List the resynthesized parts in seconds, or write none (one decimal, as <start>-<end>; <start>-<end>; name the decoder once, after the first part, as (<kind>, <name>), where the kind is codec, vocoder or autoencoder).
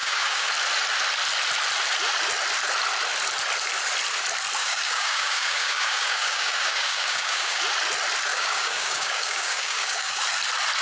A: 0.0-0.5 (codec, DAC); 4.6-7.6; 8.3-10.2